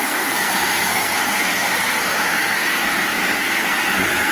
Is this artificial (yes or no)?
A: yes